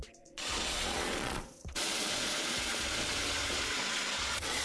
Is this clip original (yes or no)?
no